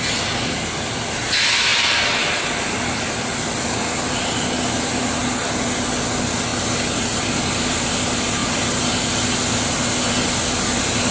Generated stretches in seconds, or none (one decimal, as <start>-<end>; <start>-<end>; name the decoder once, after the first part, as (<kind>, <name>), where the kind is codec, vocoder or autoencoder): none